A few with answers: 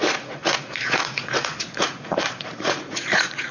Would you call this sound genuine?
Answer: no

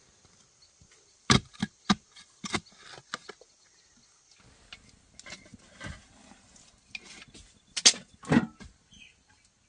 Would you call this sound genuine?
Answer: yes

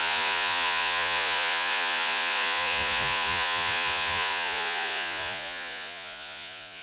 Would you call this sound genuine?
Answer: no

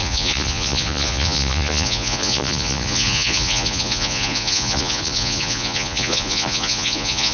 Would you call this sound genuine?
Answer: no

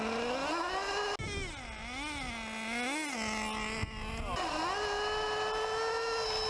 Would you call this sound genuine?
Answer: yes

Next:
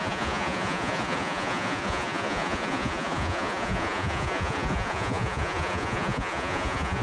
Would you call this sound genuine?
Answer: no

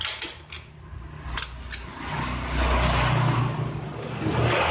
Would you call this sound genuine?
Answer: yes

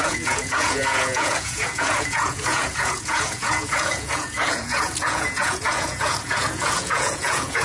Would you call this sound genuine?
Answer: no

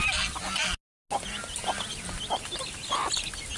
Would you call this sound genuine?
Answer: yes